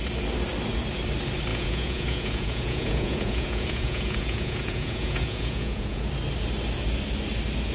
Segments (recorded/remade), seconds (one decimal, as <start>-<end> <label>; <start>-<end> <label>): 0.0-1.5 recorded; 1.5-6.1 remade; 6.1-7.7 recorded

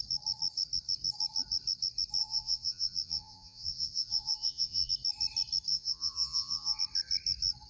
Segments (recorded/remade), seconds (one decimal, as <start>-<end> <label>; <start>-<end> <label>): 0.0-2.2 recorded; 2.2-4.9 remade; 4.9-5.7 recorded; 5.7-6.8 remade; 6.8-7.7 recorded